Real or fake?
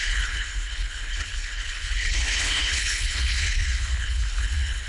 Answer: fake